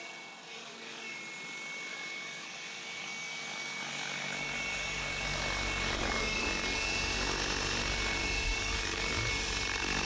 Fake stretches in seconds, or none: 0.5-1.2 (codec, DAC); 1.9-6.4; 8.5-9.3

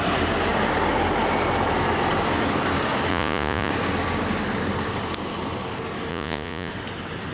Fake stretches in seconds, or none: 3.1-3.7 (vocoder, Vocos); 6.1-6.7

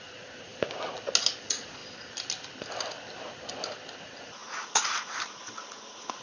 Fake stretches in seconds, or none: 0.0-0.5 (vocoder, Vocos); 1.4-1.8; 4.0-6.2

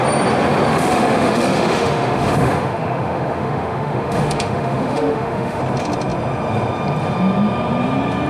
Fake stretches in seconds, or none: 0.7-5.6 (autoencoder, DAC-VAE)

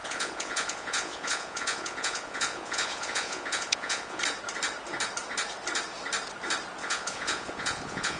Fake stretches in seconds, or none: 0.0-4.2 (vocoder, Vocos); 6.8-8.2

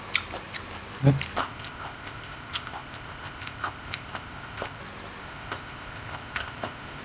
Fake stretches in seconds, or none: 1.4-4.8 (codec, ZipCodec); 5.2-7.0